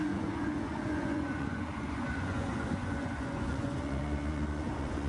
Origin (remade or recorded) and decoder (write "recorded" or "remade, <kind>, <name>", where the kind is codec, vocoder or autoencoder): remade, vocoder, Vocos